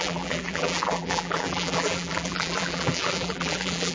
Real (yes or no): no